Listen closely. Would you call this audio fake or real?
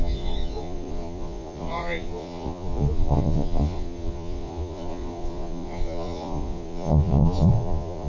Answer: fake